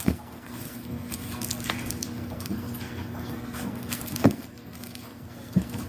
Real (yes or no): no